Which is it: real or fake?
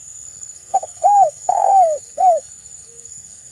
fake